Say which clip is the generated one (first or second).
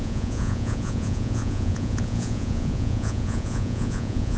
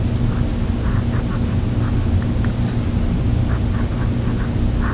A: first